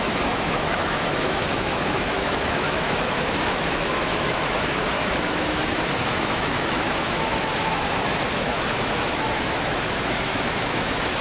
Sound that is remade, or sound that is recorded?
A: remade